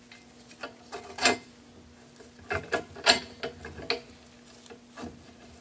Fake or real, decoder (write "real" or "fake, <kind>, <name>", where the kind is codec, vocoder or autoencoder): real